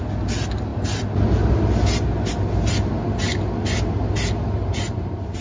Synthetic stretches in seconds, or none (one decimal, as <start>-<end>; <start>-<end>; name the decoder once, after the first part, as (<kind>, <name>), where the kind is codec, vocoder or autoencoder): none